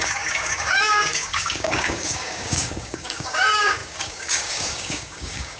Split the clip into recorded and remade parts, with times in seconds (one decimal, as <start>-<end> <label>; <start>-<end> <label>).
0.0-5.6 remade

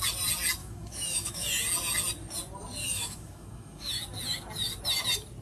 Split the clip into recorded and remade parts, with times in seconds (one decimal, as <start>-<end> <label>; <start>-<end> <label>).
0.0-0.6 recorded; 0.6-1.5 remade; 1.5-2.8 recorded; 2.8-3.9 remade; 3.9-5.4 recorded

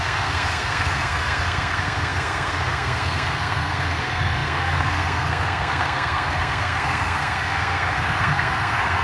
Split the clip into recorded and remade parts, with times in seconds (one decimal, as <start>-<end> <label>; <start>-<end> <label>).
0.0-9.0 remade

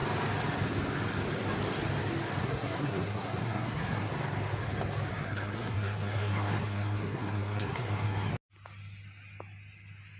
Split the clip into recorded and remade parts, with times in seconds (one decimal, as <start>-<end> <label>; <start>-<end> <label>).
0.0-2.4 recorded; 2.4-4.1 remade; 4.1-5.1 recorded; 5.1-8.3 remade; 8.3-10.2 recorded